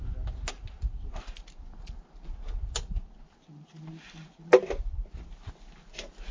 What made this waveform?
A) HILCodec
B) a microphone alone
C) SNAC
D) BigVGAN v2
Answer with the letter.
B